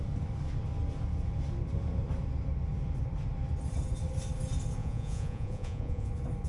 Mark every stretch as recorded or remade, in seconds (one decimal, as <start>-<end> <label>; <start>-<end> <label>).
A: 0.0-4.8 recorded; 4.8-6.1 remade; 6.1-6.5 recorded